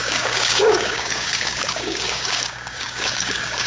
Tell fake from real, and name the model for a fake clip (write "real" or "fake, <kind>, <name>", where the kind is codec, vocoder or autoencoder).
fake, codec, DAC